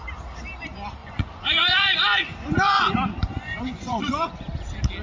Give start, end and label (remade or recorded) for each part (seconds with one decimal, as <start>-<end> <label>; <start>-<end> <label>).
0.0-1.0 recorded; 1.0-2.8 remade; 2.8-3.2 recorded; 3.2-4.5 remade; 4.5-5.0 recorded